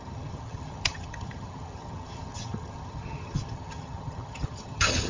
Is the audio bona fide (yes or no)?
no